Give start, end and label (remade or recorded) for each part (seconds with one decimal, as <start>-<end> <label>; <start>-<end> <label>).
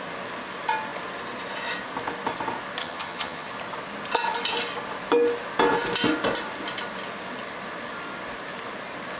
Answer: 0.0-2.8 recorded; 2.8-3.5 remade; 3.5-9.2 recorded